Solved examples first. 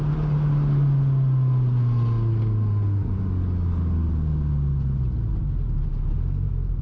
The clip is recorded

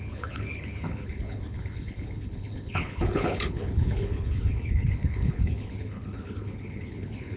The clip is remade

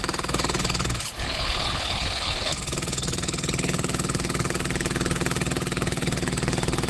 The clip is remade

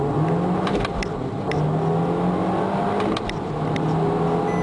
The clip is recorded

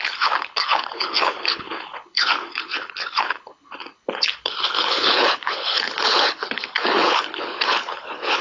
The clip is remade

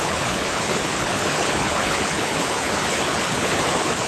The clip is remade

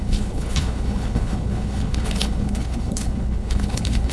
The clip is remade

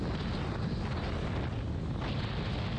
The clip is recorded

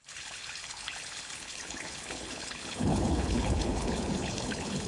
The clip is remade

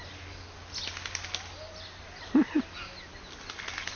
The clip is recorded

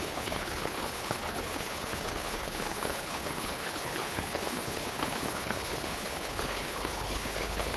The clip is remade